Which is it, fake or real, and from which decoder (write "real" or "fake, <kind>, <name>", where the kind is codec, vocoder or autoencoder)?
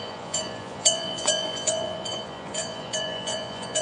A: fake, vocoder, Vocos